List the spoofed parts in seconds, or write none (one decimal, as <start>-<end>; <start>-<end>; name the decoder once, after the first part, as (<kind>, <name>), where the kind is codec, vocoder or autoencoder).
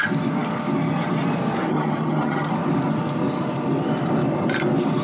1.7-2.5 (vocoder, HiFi-GAN)